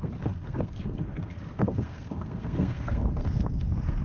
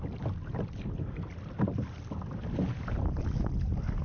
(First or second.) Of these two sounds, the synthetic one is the first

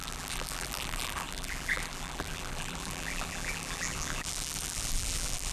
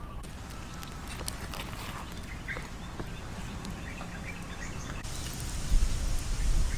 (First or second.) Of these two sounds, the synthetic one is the first